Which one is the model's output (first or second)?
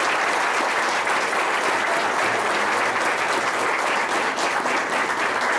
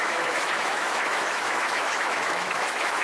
second